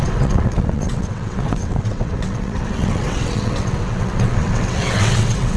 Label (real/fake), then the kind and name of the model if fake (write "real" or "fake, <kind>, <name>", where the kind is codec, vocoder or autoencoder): fake, vocoder, WaveNeXt